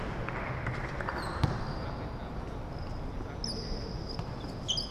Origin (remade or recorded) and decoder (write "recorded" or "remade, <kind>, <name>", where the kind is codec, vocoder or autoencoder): recorded